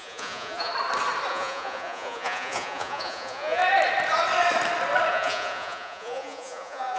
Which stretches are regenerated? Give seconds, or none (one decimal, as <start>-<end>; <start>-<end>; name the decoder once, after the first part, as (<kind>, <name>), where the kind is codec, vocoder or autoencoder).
0.0-0.7 (vocoder, Vocos); 1.3-3.6; 5.1-7.0